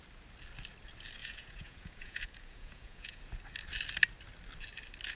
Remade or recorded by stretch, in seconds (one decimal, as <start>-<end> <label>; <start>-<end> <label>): 0.0-1.2 recorded; 1.2-3.2 remade; 3.2-5.2 recorded